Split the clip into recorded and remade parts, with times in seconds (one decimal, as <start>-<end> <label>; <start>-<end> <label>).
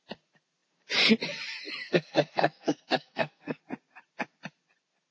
0.0-1.8 recorded; 1.8-3.6 remade; 3.6-5.1 recorded